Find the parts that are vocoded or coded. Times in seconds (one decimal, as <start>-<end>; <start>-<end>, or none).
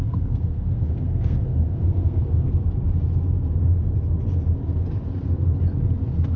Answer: 0.0-2.4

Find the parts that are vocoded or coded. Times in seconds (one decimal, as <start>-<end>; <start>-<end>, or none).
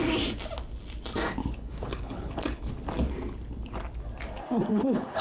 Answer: 1.4-2.7; 4.7-5.2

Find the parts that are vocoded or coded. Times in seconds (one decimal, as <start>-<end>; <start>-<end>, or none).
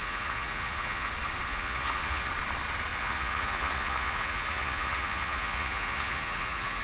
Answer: 0.0-1.1; 1.5-2.3; 2.9-6.8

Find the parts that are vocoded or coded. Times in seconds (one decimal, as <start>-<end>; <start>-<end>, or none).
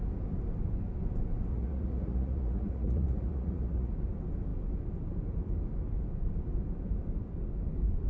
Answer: 1.5-3.9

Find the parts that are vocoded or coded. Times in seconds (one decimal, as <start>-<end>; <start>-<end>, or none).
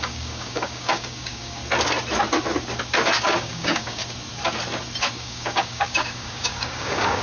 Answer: 0.0-1.6; 3.2-4.0; 5.1-7.2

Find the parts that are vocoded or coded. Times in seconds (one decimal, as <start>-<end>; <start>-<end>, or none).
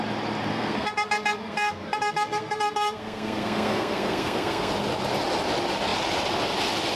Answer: 0.5-4.7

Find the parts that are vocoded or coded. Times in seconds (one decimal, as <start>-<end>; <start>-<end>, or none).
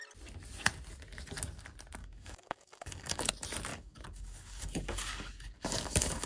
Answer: 2.0-3.3; 3.7-6.3